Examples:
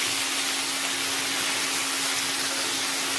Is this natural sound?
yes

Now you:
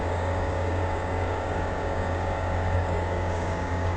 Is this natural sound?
no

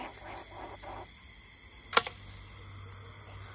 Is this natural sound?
yes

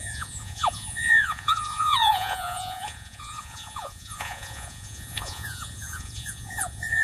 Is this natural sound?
no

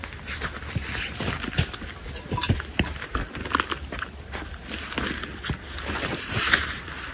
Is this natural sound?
yes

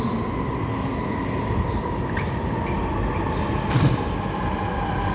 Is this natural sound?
yes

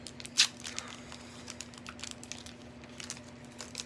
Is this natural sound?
yes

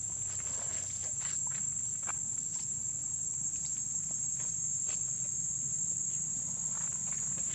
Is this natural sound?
yes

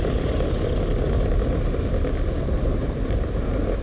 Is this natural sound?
yes